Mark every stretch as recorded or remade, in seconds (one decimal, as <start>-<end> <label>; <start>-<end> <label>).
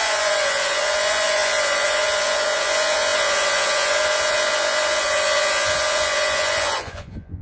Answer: 0.0-7.4 remade